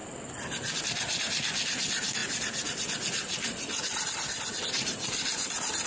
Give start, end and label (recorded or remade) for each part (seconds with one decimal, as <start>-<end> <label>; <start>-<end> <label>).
0.0-0.8 recorded; 0.8-2.2 remade; 2.2-4.6 recorded; 4.6-5.9 remade